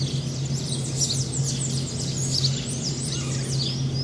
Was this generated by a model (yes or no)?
no